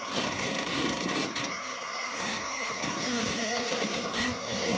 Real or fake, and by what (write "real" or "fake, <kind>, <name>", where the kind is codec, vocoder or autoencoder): fake, codec, SNAC